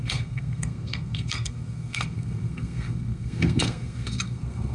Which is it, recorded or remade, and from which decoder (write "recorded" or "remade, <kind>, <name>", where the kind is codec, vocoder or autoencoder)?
remade, codec, SNAC